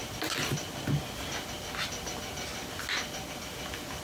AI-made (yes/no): no